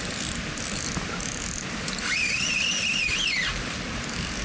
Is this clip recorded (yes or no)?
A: yes